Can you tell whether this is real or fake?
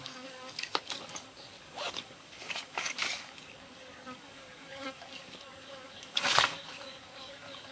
fake